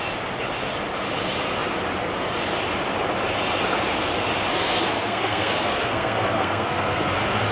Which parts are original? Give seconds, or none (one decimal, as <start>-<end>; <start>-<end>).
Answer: 0.0-4.5